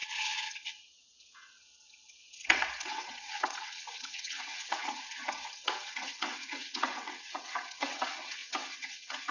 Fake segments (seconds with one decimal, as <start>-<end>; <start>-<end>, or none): 0.0-9.3